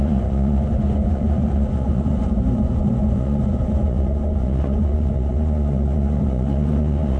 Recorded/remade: remade